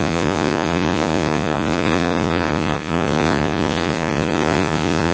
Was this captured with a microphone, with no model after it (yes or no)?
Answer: no